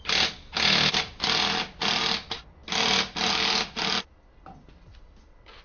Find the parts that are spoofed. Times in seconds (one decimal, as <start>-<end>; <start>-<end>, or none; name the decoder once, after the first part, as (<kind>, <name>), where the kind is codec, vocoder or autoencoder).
none